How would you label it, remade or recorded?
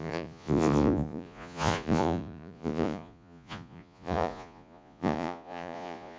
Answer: remade